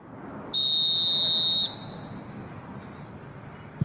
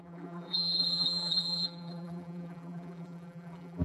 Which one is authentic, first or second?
first